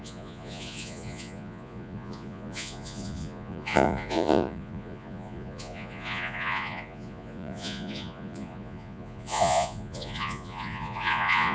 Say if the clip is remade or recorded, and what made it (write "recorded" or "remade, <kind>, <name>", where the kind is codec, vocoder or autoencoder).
remade, vocoder, Vocos